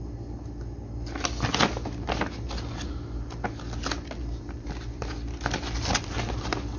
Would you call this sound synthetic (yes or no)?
no